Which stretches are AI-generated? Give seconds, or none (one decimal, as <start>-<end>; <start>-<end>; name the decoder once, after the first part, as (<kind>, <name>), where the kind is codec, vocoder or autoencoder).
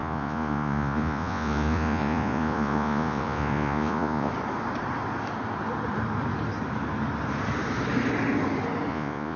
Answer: 0.0-4.3 (vocoder, Vocos); 8.9-9.4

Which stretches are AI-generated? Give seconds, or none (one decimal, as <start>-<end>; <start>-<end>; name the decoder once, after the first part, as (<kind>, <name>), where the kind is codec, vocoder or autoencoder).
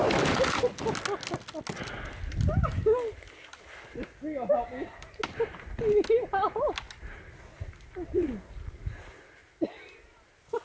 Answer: none